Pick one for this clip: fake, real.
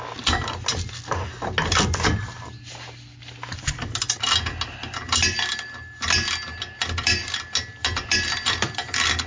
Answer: real